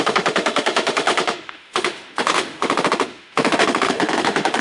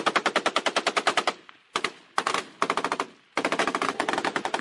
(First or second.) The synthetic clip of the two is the first